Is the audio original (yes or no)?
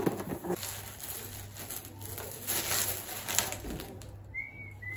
yes